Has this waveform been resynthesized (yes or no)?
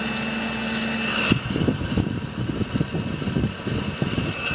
no